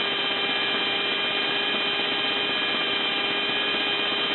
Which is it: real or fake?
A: real